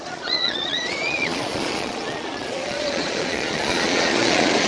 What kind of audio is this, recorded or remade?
remade